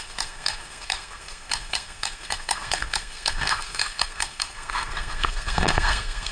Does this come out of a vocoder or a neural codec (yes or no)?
yes